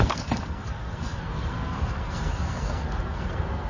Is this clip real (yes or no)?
no